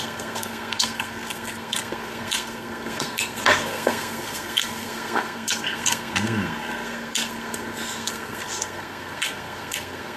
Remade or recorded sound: remade